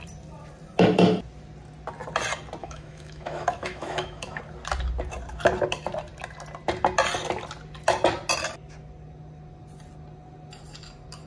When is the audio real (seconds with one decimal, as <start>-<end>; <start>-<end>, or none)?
0.0-2.6; 4.4-11.3